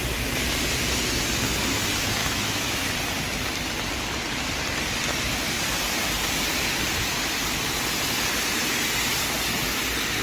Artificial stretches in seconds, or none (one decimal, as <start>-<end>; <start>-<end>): 2.2-2.9